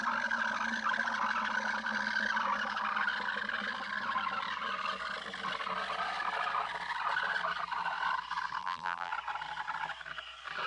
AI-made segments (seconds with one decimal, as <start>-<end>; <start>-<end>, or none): 8.6-9.1